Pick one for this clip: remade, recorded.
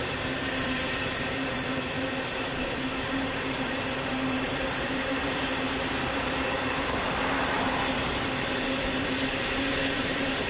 remade